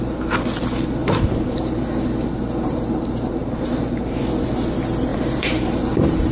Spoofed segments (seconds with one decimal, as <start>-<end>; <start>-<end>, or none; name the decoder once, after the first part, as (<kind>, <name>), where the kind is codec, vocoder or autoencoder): 1.0-4.2 (vocoder, BigVGAN v2); 5.1-6.3